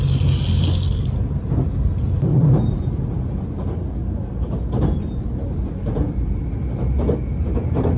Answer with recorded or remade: recorded